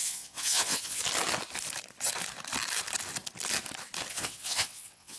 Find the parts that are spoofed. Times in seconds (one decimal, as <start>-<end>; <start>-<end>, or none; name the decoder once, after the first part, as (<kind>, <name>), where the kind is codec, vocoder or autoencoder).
0.0-1.0 (vocoder, WaveNeXt); 4.1-5.2